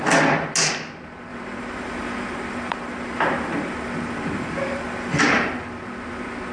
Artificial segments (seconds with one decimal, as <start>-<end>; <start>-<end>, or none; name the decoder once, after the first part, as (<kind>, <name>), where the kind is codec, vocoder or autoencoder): 1.3-5.2 (vocoder, BigVGAN v2)